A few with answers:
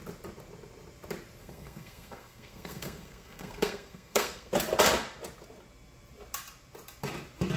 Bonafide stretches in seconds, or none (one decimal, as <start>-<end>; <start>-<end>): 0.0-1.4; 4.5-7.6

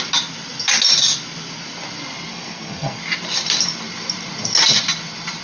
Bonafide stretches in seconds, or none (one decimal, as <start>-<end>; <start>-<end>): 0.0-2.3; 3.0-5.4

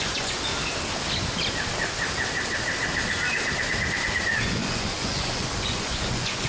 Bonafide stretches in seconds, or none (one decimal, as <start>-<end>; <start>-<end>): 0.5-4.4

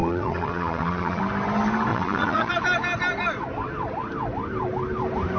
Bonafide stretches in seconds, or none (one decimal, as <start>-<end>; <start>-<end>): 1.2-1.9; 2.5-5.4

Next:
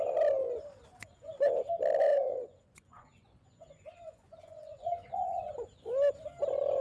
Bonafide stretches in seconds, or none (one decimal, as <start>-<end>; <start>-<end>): 0.0-0.9; 1.5-2.1; 5.5-6.8

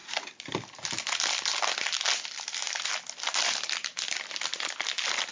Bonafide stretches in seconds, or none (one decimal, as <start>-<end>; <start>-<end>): 0.0-5.3

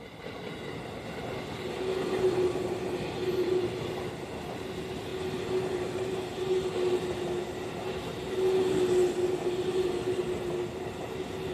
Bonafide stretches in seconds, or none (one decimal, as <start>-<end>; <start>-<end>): 0.0-11.5

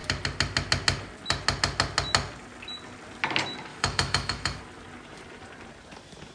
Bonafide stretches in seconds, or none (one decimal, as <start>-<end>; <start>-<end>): 0.0-3.7; 4.6-6.3